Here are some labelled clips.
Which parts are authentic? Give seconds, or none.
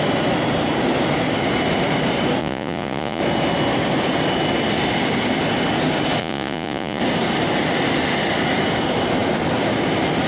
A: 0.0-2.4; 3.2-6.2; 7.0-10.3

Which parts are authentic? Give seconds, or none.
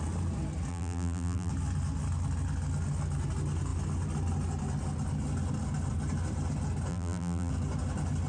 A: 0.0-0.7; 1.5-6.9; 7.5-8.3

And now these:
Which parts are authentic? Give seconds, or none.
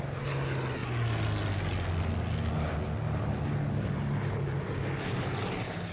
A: 0.0-5.9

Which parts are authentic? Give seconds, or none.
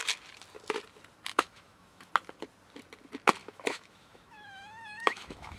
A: 0.0-1.3; 2.1-3.4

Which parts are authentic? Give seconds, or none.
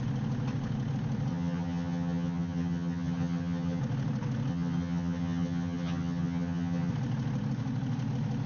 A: 0.0-1.3; 3.8-4.5; 6.9-8.5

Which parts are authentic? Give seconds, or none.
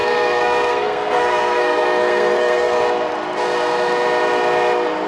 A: 2.8-5.1